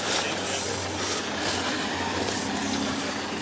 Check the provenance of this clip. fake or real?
real